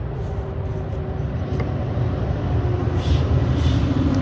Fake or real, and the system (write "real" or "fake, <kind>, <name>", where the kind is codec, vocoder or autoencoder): real